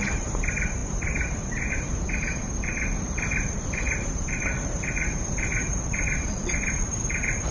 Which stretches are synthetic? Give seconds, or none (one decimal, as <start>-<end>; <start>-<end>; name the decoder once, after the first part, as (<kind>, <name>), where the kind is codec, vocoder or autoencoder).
0.0-7.5 (vocoder, BigVGAN v2)